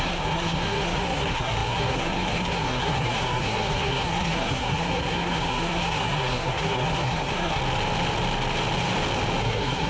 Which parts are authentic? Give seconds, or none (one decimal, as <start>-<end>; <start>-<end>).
7.6-9.4